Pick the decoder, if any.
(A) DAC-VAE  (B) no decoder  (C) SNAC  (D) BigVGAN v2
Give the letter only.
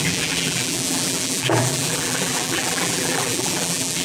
D